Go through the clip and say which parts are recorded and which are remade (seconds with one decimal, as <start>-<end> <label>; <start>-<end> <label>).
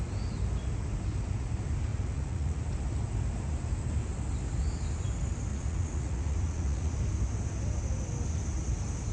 0.0-1.9 recorded; 1.9-2.6 remade; 2.6-5.5 recorded; 5.5-6.9 remade; 6.9-9.1 recorded